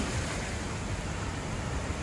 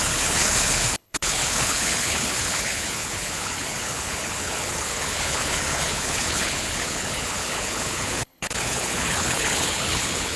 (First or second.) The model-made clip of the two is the second